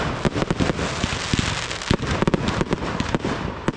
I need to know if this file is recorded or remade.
recorded